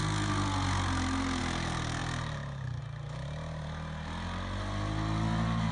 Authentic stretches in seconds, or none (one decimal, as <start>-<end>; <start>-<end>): 0.0-5.7